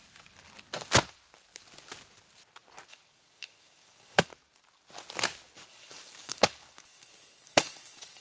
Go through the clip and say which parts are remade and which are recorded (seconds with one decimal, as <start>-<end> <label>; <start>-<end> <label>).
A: 0.0-2.9 recorded; 2.9-4.3 remade; 4.3-5.7 recorded; 5.7-8.2 remade